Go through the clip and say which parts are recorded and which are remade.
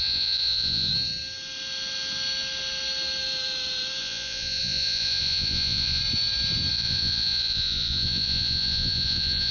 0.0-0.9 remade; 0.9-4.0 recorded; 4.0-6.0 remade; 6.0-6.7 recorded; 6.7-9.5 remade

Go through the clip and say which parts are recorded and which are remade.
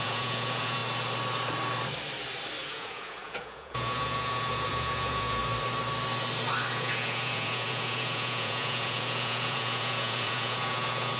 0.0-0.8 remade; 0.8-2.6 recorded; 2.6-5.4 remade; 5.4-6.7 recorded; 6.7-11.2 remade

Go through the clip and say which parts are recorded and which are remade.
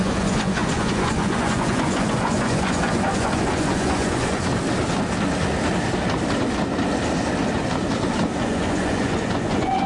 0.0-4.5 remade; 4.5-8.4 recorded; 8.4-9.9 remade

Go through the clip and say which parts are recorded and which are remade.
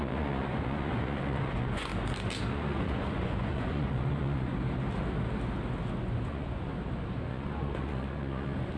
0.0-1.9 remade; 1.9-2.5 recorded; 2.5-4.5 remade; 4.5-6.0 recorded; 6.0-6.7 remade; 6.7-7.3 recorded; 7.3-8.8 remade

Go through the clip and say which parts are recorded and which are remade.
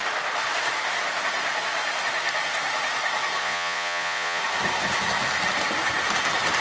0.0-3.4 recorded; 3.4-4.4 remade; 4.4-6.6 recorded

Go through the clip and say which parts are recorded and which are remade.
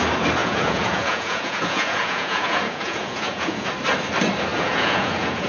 0.0-0.4 recorded; 0.4-3.7 remade; 3.7-4.5 recorded; 4.5-5.5 remade